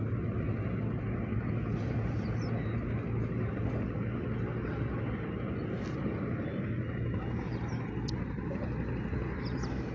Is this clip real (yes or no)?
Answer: yes